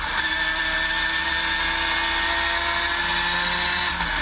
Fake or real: real